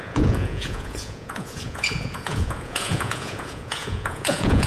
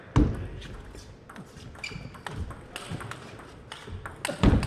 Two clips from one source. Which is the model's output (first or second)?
first